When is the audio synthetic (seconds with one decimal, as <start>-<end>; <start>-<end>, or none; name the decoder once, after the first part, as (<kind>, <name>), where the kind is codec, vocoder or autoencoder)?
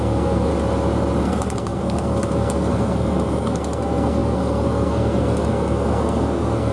0.0-0.5 (codec, SNAC); 1.2-6.7